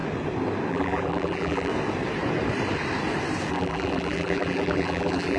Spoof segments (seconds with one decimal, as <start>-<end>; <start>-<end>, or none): 0.7-1.7; 3.5-5.4